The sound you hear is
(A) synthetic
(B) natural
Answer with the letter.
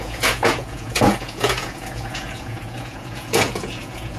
A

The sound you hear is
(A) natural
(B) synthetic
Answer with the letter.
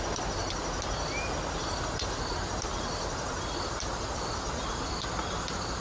A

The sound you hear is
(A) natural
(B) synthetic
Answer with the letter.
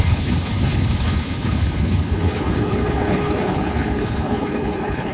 B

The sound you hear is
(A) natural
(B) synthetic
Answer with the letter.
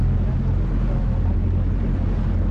A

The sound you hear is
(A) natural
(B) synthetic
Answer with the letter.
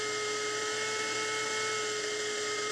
A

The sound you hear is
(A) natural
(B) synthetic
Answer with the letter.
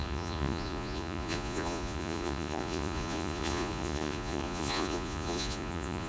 B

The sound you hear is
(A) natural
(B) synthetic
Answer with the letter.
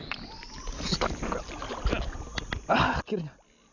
A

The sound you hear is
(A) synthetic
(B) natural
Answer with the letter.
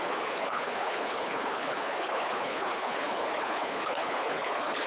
A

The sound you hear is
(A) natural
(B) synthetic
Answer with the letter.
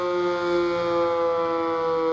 A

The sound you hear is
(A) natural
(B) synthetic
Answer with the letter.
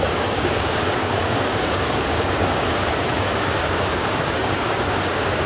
B